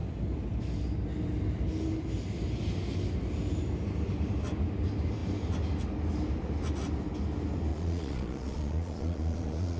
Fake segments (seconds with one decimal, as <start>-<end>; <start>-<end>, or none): 7.7-9.8